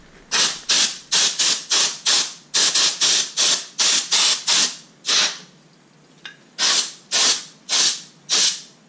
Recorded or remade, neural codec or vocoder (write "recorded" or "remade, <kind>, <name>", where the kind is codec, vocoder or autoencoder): recorded